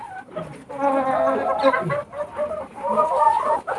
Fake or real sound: real